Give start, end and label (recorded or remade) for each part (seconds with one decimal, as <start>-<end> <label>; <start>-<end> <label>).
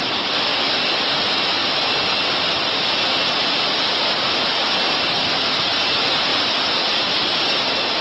0.0-8.0 recorded